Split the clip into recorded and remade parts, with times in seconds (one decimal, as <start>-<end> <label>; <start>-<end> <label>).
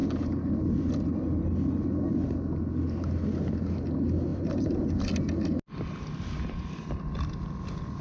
0.0-4.3 recorded; 4.3-4.9 remade; 4.9-8.0 recorded